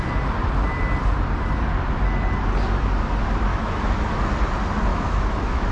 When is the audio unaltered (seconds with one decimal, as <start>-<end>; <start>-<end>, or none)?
0.0-3.5; 4.2-4.9

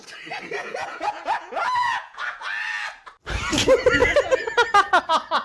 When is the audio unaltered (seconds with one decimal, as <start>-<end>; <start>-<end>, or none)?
0.0-0.6; 2.2-5.4

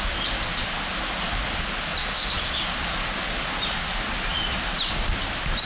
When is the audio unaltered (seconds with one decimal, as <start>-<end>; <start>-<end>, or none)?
0.0-5.7

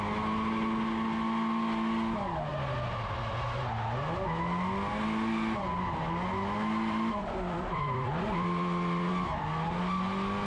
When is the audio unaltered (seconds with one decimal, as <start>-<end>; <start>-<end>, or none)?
0.0-7.2; 9.1-10.5